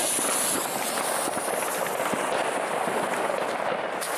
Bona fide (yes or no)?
yes